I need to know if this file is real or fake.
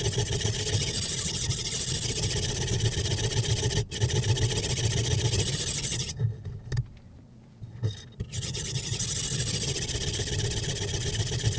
real